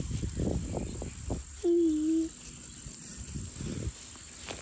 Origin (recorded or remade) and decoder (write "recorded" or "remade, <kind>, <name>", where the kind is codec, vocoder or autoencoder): recorded